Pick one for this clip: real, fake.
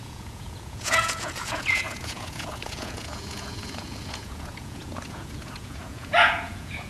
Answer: fake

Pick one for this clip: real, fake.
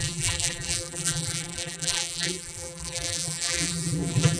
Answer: fake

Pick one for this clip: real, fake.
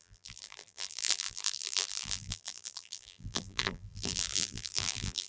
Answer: fake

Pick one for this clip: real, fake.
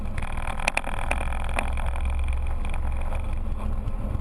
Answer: real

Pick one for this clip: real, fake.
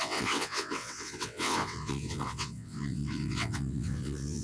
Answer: fake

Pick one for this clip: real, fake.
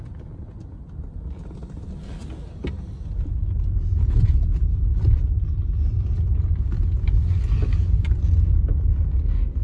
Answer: real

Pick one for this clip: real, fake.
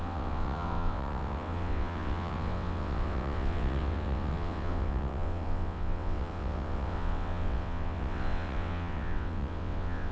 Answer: fake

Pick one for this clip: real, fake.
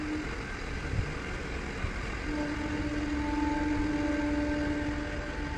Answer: real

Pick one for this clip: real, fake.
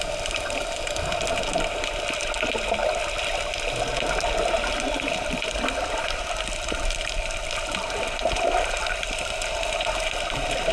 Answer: real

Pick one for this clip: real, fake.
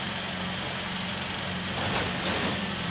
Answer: real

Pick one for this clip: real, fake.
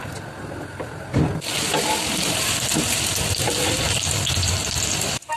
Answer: real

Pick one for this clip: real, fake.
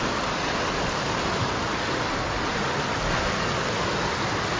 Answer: real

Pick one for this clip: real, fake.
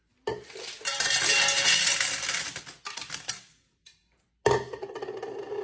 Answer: real